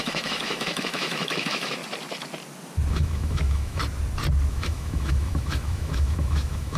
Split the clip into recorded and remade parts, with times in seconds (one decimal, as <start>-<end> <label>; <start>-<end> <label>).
0.0-1.8 remade; 1.8-2.9 recorded; 2.9-3.8 remade; 3.8-4.5 recorded; 4.5-6.8 remade